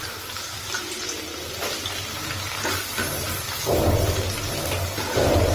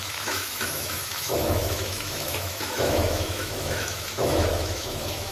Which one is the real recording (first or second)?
first